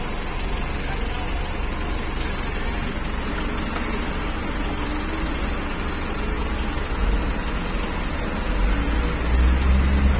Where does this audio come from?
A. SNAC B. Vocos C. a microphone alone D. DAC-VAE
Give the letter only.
C